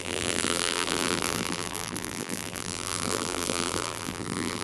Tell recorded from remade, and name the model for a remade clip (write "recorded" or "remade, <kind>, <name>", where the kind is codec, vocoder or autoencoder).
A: remade, vocoder, BigVGAN v2